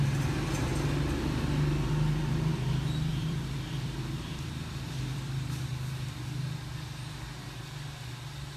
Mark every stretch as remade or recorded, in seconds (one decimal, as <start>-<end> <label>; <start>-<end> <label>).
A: 0.0-3.1 recorded; 3.1-5.7 remade; 5.7-8.6 recorded